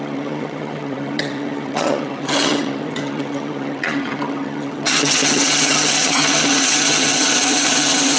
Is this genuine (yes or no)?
no